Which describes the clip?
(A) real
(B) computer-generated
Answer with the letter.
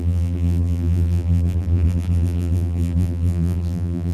B